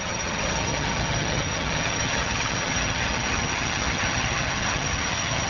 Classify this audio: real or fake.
fake